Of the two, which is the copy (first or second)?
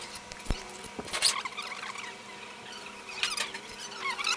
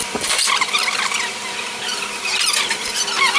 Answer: second